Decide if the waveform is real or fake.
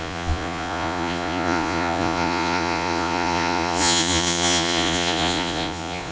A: fake